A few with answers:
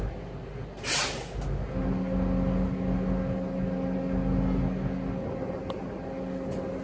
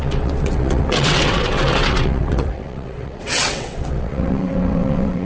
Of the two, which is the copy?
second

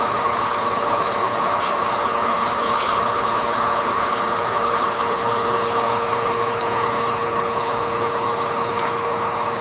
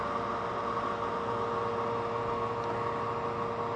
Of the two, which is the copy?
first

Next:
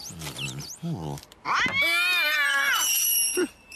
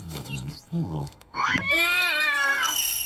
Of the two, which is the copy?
second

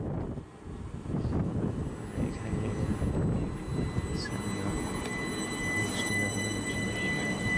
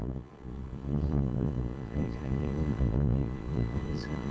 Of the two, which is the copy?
second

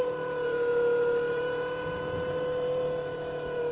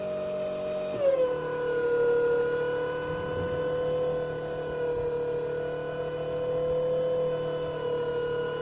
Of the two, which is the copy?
first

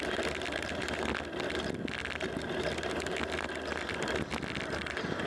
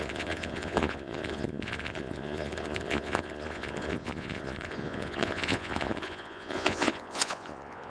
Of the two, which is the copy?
second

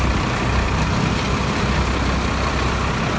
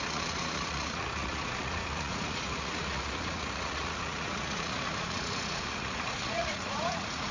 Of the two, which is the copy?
second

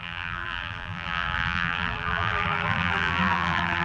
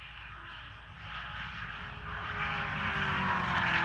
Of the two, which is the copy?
first